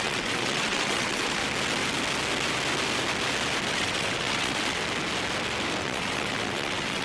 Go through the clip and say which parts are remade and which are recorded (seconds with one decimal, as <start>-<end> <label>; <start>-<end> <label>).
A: 0.0-1.4 remade; 1.4-3.7 recorded; 3.7-4.8 remade; 4.8-5.8 recorded; 5.8-7.0 remade